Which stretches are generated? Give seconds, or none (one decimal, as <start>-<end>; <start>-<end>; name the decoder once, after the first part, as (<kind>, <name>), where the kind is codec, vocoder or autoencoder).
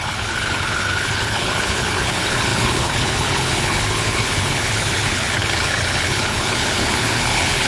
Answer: 0.0-7.7 (codec, HILCodec)